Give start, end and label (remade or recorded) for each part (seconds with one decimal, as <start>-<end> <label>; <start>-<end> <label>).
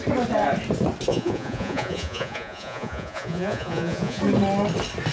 0.0-1.1 recorded; 1.1-4.2 remade; 4.2-5.1 recorded